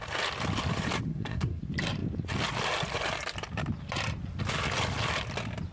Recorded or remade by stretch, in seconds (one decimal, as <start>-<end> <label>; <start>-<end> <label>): 0.0-1.1 recorded; 1.1-1.6 remade; 1.6-5.7 recorded